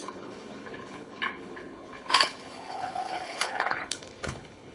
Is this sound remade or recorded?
remade